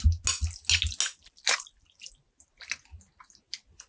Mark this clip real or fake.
real